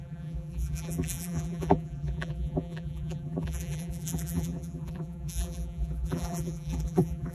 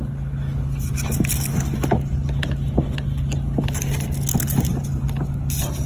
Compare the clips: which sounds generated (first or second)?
first